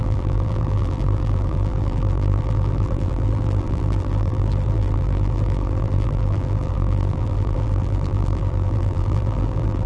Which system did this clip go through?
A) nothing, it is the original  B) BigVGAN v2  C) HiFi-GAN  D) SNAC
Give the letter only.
B